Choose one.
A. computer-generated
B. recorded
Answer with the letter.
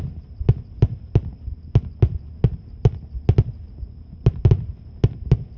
B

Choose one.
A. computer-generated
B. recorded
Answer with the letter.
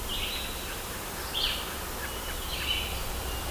B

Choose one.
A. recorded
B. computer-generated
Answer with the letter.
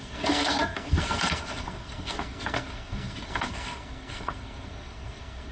B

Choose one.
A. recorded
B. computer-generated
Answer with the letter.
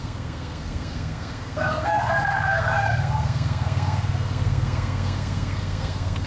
B